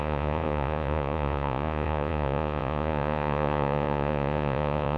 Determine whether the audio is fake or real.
fake